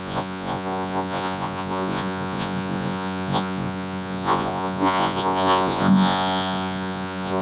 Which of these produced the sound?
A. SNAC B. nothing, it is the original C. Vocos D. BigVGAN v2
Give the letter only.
C